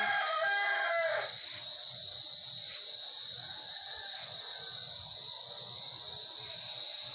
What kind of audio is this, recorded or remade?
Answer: recorded